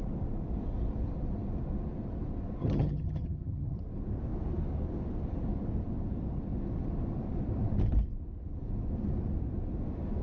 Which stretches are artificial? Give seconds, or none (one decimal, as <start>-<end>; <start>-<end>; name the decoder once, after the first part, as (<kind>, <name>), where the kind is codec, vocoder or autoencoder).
2.6-3.8 (vocoder, HiFi-GAN)